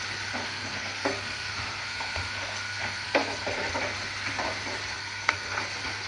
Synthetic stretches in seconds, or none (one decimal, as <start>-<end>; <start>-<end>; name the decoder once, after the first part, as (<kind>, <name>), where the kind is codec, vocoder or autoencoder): 0.4-3.7 (codec, SNAC); 5.0-5.6